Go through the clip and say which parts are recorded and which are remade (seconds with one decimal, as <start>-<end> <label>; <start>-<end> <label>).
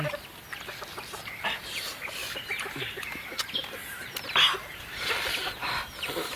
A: 0.0-6.4 recorded